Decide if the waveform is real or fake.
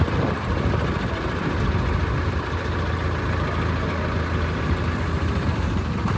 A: real